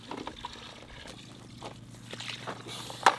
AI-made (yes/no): no